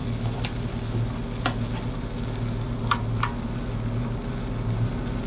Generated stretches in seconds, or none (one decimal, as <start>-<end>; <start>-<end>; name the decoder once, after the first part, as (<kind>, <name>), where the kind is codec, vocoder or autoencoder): none